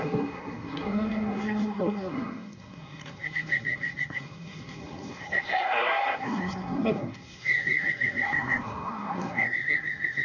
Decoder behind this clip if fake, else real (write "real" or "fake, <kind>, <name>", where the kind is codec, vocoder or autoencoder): fake, codec, SNAC